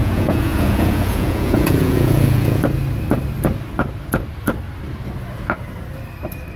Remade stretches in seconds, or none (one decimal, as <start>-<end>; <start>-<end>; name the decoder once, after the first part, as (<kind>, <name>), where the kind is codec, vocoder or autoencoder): 0.0-2.6 (vocoder, Vocos)